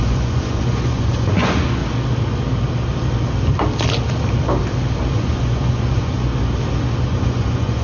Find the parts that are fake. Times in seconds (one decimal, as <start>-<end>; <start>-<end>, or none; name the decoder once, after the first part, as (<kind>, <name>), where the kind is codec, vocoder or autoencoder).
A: 0.0-1.8 (vocoder, Vocos); 5.1-6.3; 7.0-7.8